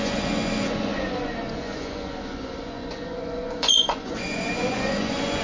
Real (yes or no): no